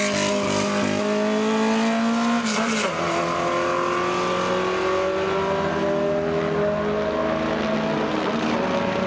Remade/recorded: recorded